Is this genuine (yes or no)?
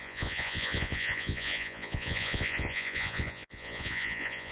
no